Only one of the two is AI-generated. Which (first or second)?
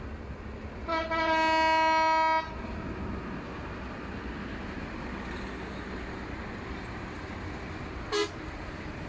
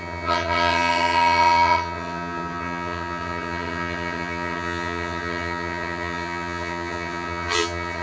second